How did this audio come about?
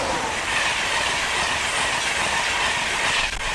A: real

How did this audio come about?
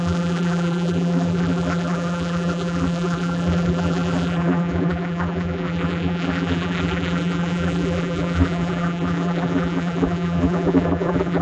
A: fake